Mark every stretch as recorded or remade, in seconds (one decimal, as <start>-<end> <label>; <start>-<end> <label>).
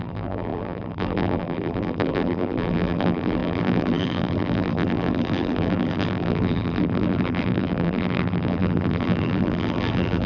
0.0-10.3 remade